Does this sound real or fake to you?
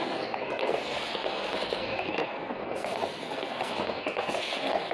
fake